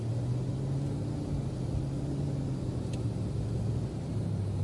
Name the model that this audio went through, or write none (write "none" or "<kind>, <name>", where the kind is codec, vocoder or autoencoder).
none